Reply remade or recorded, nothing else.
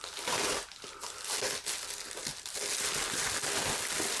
recorded